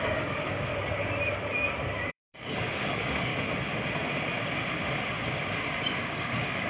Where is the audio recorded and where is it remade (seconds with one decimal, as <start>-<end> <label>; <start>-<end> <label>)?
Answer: 0.0-0.7 remade; 0.7-2.1 recorded; 2.1-3.3 remade; 3.3-6.0 recorded; 6.0-6.7 remade